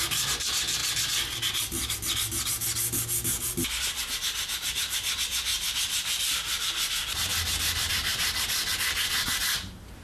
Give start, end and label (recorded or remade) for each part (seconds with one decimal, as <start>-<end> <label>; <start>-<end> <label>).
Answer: 0.0-5.5 recorded; 5.5-6.7 remade; 6.7-10.0 recorded